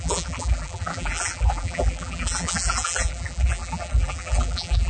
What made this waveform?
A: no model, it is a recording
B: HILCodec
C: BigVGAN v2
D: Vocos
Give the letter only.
C